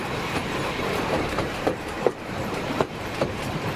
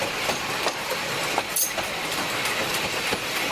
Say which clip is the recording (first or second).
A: second